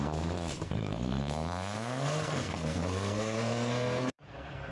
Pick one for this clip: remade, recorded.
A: remade